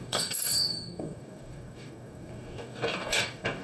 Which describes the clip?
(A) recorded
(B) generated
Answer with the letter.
B